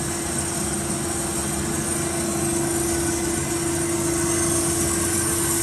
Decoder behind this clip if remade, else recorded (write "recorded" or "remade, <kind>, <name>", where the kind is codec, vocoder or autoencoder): recorded